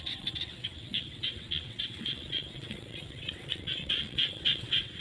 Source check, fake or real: fake